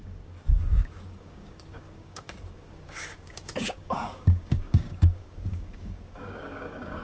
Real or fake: fake